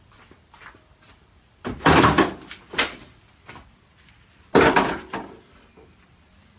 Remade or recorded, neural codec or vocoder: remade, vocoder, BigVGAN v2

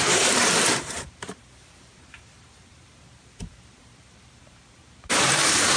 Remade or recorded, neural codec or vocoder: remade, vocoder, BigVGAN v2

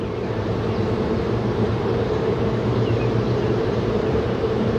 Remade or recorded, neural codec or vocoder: remade, vocoder, BigVGAN v2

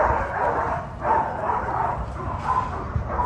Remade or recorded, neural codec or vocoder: recorded